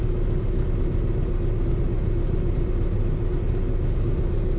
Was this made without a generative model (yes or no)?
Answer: yes